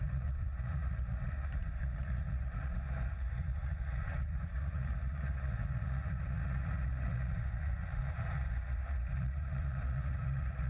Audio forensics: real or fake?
fake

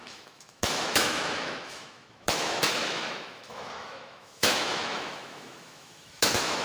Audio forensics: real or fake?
fake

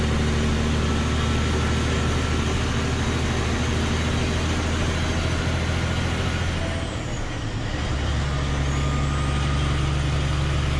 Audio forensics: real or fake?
real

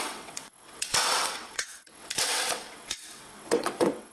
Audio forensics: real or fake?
fake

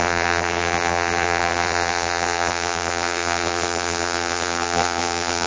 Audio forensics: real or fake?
fake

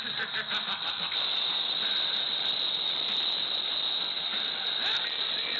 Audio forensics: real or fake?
real